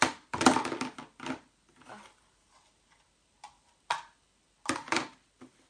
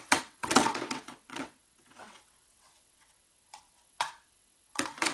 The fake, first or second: second